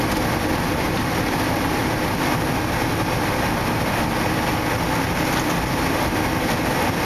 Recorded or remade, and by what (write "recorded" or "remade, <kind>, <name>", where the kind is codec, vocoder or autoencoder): recorded